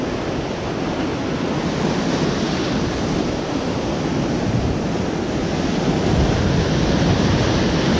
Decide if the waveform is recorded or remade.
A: recorded